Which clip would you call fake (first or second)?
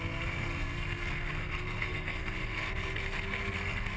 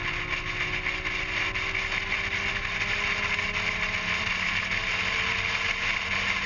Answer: first